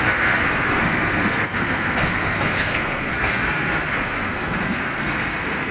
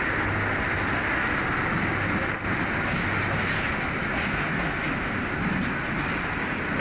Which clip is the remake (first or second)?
first